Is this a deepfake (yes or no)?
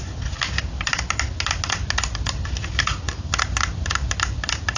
no